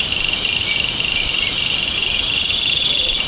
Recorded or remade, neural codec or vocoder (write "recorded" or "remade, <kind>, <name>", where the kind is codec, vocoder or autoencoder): remade, vocoder, BigVGAN v2